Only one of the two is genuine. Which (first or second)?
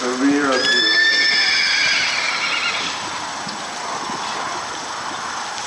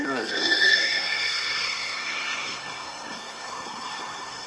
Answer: first